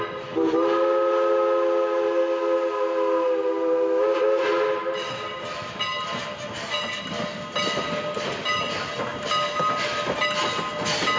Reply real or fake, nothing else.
real